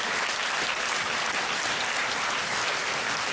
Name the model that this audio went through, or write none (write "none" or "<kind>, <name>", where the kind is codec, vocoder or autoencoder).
none